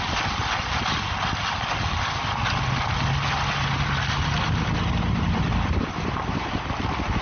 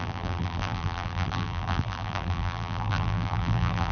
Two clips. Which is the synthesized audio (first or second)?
second